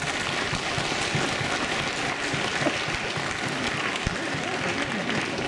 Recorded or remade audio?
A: recorded